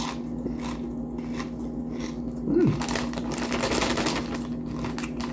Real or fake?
real